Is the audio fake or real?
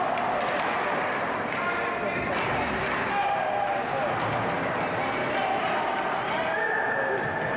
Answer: real